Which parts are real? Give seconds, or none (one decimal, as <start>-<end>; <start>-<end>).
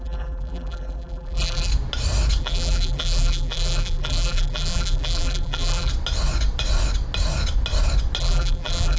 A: 1.7-2.4; 5.9-8.2